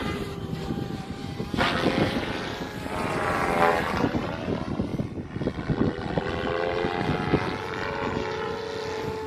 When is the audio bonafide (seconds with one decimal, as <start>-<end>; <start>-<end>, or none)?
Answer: 1.2-2.0; 4.9-9.3

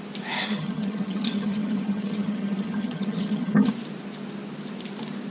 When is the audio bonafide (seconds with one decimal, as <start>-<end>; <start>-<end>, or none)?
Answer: 0.0-0.5; 3.7-5.3

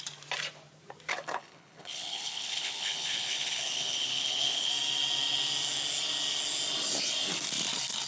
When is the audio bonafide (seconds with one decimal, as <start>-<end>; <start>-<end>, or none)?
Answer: 0.0-1.1; 4.7-8.1

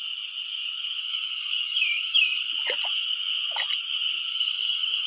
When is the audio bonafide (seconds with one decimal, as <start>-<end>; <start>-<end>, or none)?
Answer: 0.0-1.0; 2.5-4.3

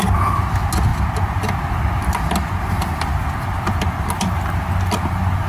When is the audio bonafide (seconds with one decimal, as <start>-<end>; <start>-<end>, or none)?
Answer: 0.0-5.5

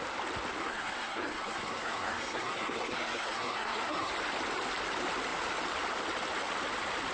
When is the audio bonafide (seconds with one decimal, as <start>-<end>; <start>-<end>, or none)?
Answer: 0.0-0.6; 4.1-7.1

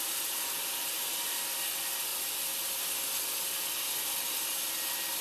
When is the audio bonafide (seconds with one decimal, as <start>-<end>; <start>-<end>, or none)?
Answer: 0.0-0.8; 1.4-5.2